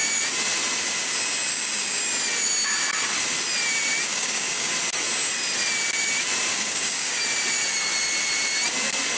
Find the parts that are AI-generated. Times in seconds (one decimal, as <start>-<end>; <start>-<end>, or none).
1.5-2.0; 4.1-4.7; 6.5-7.2